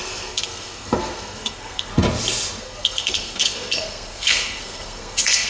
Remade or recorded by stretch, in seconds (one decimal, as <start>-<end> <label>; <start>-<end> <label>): 0.0-1.9 remade; 1.9-2.6 recorded; 2.6-5.5 remade

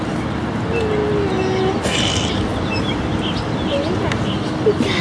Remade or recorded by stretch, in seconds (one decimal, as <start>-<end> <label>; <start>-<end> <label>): 0.0-5.0 recorded

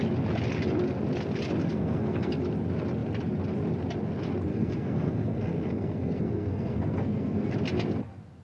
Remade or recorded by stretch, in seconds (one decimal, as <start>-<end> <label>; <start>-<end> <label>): 0.0-1.6 recorded; 1.6-2.4 remade; 2.4-4.5 recorded; 4.5-7.5 remade; 7.5-8.4 recorded

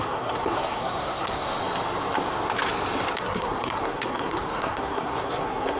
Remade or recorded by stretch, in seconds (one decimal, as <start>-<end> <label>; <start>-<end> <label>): 0.0-1.6 remade; 1.6-3.2 recorded; 3.2-5.8 remade

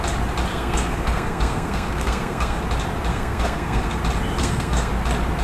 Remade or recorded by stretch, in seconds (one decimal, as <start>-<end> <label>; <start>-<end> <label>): 0.0-0.5 recorded; 0.5-2.6 remade; 2.6-3.1 recorded; 3.1-4.0 remade; 4.0-4.4 recorded; 4.4-4.9 remade; 4.9-5.4 recorded

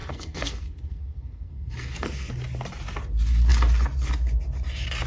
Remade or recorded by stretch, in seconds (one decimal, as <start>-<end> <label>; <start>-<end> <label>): 0.0-2.3 remade; 2.3-5.1 recorded

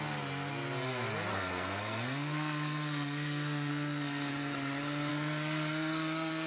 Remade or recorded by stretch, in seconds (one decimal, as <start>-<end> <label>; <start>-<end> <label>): 0.0-1.3 recorded; 1.3-4.3 remade; 4.3-5.1 recorded; 5.1-6.5 remade